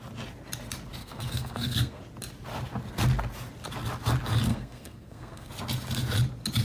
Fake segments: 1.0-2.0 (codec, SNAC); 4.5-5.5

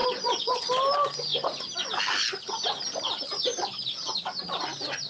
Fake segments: 0.0-0.7 (vocoder, Vocos)

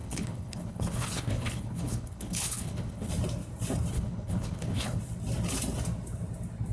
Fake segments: 0.0-3.1 (codec, HILCodec); 3.9-5.0

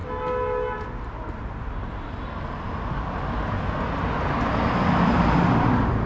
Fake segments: none